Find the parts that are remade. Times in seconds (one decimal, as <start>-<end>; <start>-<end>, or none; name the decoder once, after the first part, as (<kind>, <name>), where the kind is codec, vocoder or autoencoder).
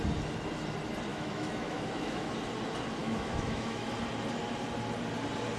1.1-2.3 (autoencoder, DAC-VAE); 3.0-3.9